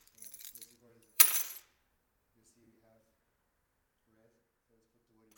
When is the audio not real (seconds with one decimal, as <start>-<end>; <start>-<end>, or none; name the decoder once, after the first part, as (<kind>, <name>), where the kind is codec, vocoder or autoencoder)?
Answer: 0.0-3.2 (vocoder, BigVGAN v2)